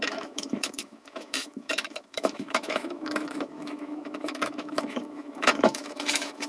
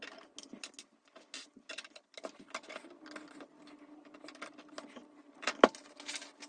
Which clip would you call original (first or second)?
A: second